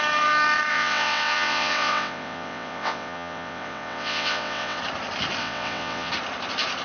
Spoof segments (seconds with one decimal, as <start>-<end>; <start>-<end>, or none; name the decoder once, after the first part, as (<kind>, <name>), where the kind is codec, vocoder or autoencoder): 0.7-4.8 (vocoder, WaveNeXt); 5.4-6.1